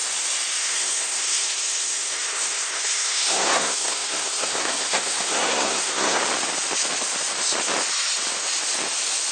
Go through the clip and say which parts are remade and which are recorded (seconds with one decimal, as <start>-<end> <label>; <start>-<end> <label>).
0.0-0.6 recorded; 0.6-6.2 remade; 6.2-9.3 recorded